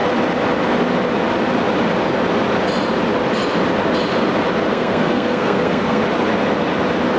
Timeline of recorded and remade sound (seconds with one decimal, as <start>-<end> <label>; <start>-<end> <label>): 0.0-4.7 recorded; 4.7-6.0 remade; 6.0-7.2 recorded